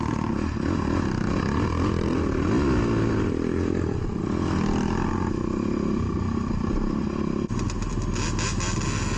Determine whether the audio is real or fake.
real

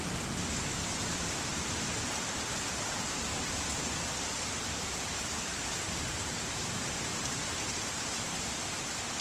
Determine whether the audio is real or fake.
fake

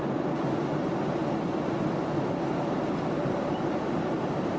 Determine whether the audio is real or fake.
real